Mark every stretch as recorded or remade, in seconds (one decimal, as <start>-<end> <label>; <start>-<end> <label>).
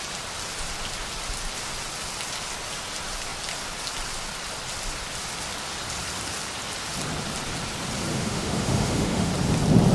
0.0-8.1 recorded; 8.1-9.3 remade; 9.3-9.9 recorded